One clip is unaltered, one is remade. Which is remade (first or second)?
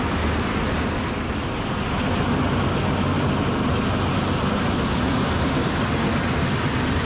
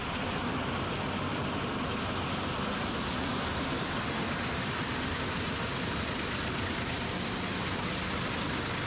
second